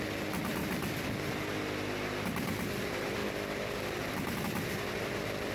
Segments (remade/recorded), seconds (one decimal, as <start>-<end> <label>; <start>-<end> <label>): 0.0-3.2 recorded; 3.2-4.4 remade; 4.4-5.5 recorded